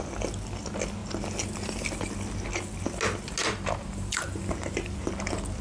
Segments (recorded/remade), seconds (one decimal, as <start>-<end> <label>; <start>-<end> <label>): 0.0-3.4 recorded; 3.4-4.4 remade; 4.4-5.6 recorded